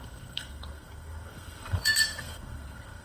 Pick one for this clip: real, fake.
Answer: fake